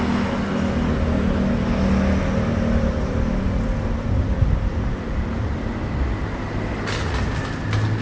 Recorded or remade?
recorded